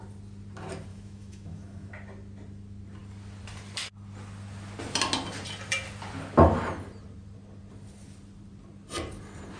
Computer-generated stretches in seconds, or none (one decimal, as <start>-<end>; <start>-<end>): 0.9-1.9